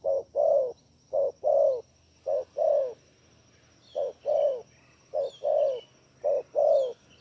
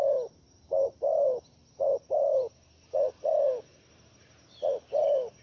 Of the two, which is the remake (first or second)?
second